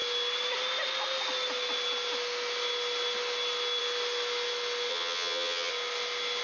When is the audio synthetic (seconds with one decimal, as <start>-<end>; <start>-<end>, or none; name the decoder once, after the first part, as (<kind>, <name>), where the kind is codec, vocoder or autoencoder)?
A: 4.9-5.7 (vocoder, HiFi-GAN)